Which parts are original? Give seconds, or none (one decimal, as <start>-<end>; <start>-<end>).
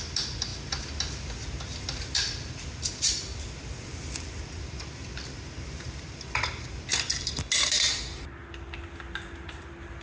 0.0-10.0